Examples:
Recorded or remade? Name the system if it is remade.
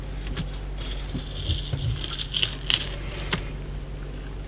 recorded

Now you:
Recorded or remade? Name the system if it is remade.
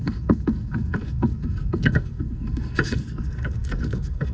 remade, codec, SNAC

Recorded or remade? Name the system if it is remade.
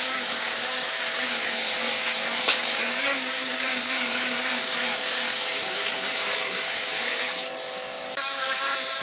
remade, codec, DAC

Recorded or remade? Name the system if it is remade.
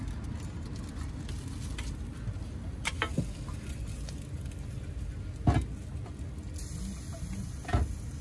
recorded